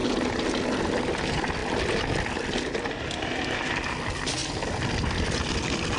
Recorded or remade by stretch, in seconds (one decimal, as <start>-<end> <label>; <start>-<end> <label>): 0.0-6.0 recorded